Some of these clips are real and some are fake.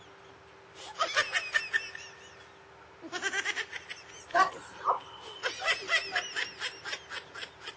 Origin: real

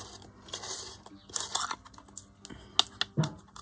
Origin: real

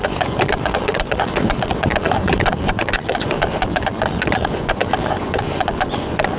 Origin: fake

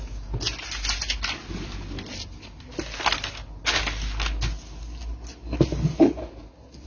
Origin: real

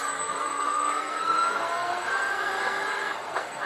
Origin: fake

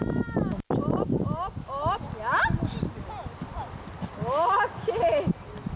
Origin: real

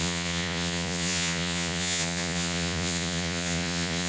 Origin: fake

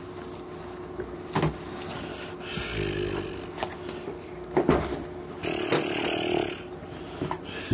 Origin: real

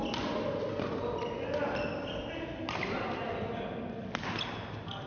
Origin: real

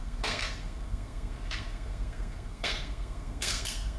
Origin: fake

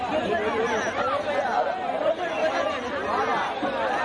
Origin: real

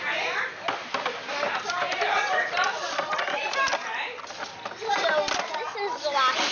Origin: real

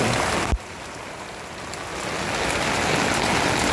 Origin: real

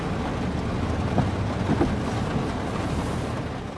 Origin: real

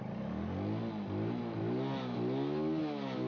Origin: real